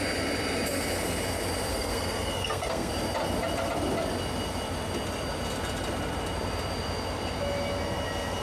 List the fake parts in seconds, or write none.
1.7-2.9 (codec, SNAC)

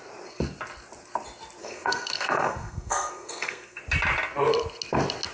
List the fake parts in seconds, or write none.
1.6-3.8 (codec, SNAC)

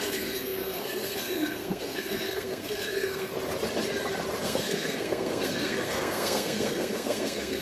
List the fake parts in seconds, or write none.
0.0-3.3 (codec, SNAC); 4.4-7.6

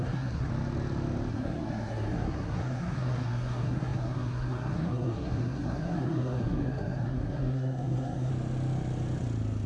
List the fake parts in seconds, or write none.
0.0-0.5 (codec, SNAC); 1.3-8.3

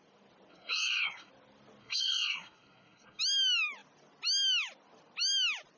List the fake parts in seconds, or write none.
0.5-1.3 (codec, SNAC); 1.8-3.2

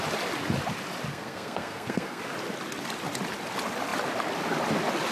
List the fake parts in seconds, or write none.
1.1-2.2 (codec, SNAC)

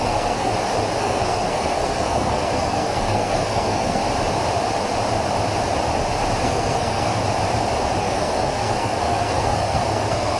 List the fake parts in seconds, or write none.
0.0-0.5 (codec, SNAC); 1.0-4.0; 6.4-7.2; 8.0-10.4

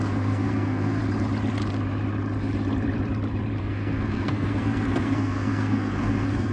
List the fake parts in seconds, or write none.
0.0-1.0 (codec, SNAC); 3.6-6.5